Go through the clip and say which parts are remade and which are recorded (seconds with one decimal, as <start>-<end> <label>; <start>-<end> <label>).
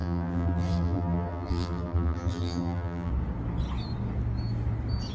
0.0-3.1 remade; 3.1-5.1 recorded